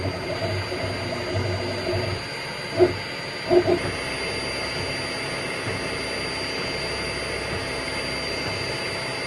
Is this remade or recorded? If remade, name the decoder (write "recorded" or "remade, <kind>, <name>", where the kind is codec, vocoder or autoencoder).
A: recorded